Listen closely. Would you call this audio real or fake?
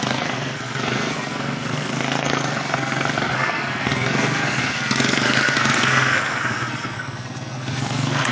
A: fake